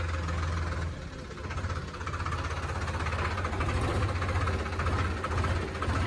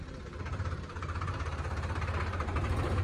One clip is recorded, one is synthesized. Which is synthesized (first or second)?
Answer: second